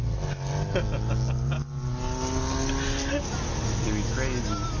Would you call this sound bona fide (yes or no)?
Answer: yes